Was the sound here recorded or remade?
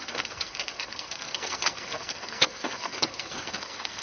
remade